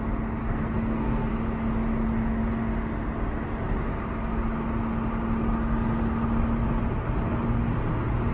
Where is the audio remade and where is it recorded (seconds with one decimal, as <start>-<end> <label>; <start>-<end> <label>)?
0.0-0.4 recorded; 0.4-1.3 remade; 1.3-8.3 recorded